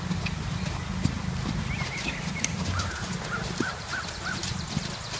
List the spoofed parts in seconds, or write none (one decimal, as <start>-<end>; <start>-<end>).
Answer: 2.0-4.8